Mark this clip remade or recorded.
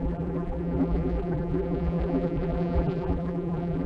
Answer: remade